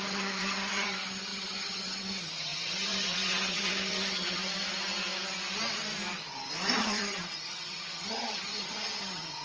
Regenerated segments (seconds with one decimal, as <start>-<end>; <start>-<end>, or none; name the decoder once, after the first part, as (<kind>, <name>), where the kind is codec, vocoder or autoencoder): 0.0-4.5 (vocoder, HiFi-GAN); 6.8-9.4